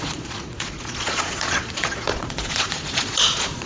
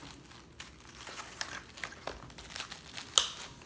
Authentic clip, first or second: second